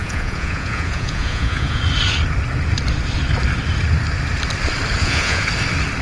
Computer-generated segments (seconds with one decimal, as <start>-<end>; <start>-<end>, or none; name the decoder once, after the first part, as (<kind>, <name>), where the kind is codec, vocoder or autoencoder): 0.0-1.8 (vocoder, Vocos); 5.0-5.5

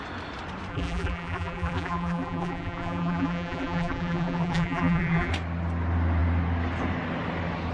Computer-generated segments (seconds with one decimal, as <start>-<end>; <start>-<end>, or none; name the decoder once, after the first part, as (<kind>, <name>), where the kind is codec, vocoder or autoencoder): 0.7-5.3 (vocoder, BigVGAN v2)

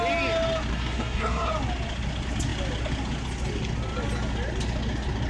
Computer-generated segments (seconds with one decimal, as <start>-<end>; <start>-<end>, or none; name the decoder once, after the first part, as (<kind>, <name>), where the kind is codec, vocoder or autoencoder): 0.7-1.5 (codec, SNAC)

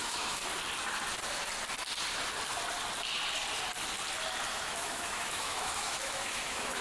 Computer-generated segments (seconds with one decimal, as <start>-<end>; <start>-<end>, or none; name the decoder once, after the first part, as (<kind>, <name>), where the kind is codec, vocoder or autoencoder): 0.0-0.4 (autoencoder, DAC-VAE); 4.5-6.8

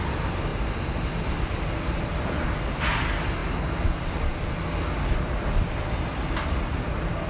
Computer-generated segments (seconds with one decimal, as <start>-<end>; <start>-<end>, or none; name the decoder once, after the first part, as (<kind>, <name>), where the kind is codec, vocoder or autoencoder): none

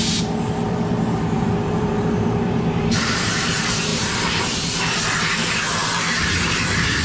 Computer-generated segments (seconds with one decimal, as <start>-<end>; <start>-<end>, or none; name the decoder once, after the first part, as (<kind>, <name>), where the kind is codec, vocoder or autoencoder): 0.0-7.0 (vocoder, BigVGAN v2)

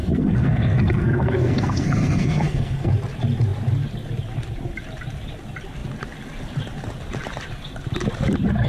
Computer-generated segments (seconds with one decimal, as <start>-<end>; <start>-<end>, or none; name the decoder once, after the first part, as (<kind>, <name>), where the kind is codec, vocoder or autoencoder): 0.0-2.9 (codec, SNAC)